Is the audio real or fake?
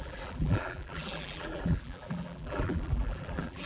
fake